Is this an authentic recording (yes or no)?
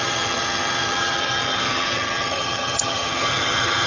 no